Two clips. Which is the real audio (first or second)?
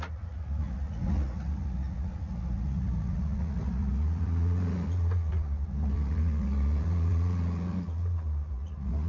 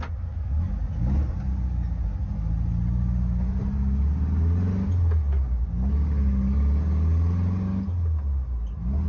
second